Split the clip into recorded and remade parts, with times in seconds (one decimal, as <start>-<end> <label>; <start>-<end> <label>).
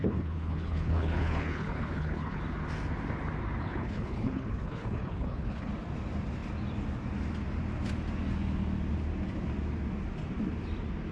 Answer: 0.0-2.4 remade; 2.4-3.6 recorded; 3.6-5.7 remade; 5.7-11.1 recorded